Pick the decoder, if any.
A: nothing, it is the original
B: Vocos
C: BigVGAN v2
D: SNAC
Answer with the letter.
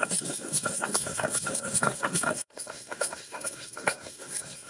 D